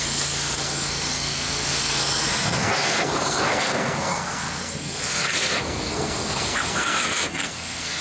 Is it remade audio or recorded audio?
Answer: remade